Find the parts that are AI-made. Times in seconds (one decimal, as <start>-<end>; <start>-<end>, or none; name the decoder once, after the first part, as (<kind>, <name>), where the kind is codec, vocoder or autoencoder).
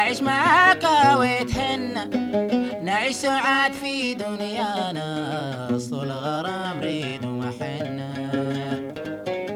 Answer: 0.0-5.4 (vocoder, BigVGAN v2); 6.0-7.1; 8.1-9.6